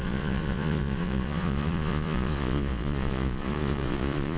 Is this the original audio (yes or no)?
no